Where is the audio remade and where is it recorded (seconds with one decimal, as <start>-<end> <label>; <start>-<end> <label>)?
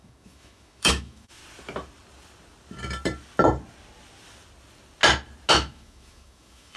0.0-1.4 remade; 1.4-5.5 recorded; 5.5-6.8 remade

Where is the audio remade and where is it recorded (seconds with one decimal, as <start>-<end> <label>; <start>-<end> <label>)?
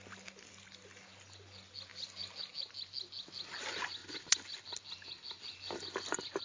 0.0-6.4 recorded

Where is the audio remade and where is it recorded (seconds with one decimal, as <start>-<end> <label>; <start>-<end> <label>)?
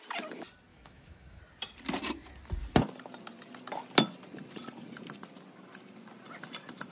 0.0-0.7 recorded; 0.7-1.4 remade; 1.4-6.9 recorded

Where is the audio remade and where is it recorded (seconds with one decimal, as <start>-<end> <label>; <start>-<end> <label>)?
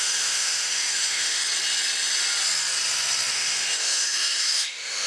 0.0-1.4 remade; 1.4-3.3 recorded; 3.3-5.1 remade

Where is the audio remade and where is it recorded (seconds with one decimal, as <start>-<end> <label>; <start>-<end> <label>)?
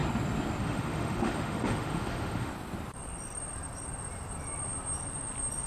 0.0-0.6 recorded; 0.6-2.5 remade; 2.5-5.7 recorded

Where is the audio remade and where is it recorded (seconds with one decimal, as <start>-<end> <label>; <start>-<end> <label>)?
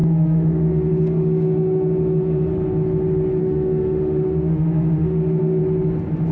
0.0-2.5 remade; 2.5-3.4 recorded; 3.4-5.6 remade; 5.6-6.3 recorded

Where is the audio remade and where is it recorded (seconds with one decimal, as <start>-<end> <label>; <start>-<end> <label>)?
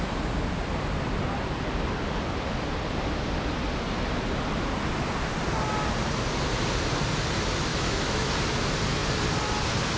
0.0-7.7 recorded; 7.7-8.3 remade; 8.3-10.0 recorded